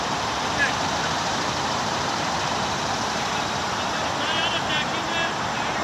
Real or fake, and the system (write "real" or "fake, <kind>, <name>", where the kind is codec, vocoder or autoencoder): fake, vocoder, BigVGAN v2